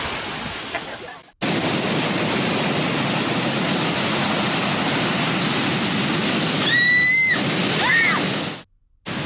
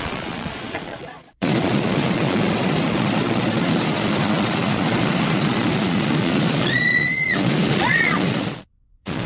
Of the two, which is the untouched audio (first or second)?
first